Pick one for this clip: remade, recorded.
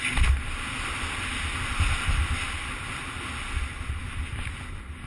recorded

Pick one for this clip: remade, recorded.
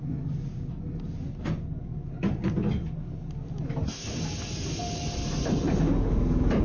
recorded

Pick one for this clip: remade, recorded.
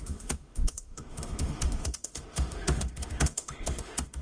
remade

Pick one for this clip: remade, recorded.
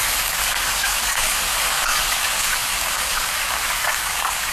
remade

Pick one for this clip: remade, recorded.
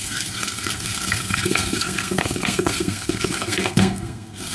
remade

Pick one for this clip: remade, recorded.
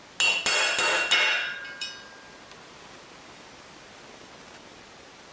recorded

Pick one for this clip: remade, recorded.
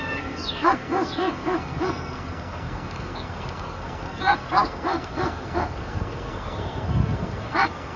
remade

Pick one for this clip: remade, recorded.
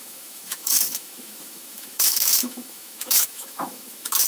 remade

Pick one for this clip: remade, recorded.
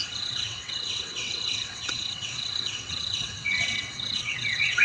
remade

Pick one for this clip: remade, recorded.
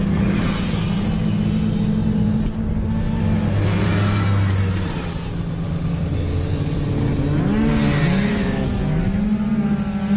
recorded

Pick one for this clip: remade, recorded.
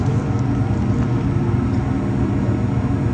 recorded